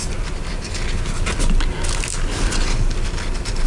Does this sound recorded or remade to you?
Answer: recorded